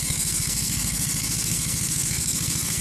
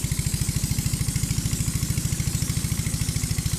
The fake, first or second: first